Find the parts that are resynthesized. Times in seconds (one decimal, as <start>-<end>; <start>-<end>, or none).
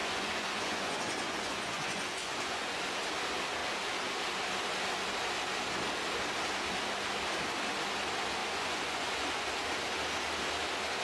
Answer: 0.0-2.8; 8.4-9.5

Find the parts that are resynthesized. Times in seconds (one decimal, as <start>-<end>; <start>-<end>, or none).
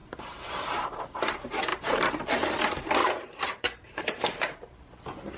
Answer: 0.0-1.0; 1.7-2.6; 3.0-4.0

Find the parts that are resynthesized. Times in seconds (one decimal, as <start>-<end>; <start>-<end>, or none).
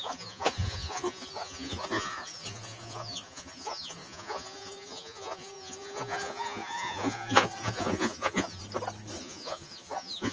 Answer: 0.0-8.6; 9.2-10.3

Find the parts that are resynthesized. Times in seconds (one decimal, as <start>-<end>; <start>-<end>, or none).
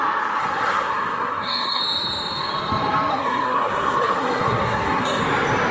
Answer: 0.4-1.8; 3.1-5.2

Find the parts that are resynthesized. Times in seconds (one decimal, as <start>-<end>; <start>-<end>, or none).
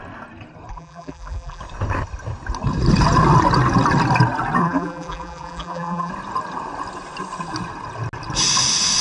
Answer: 0.7-1.6; 4.6-6.1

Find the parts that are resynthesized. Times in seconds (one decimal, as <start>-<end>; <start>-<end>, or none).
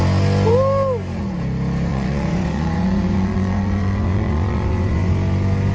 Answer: 1.9-5.1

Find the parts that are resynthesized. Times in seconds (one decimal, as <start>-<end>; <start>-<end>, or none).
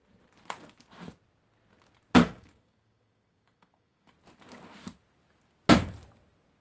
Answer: 2.2-4.1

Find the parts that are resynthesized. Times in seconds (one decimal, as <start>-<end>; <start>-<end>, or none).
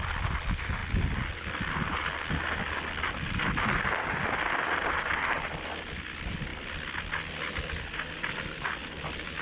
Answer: 0.0-0.8; 3.8-6.5